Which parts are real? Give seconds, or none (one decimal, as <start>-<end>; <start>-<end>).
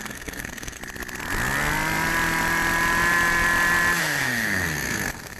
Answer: 0.8-4.0